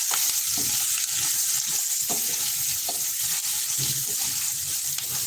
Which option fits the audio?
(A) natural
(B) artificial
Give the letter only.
A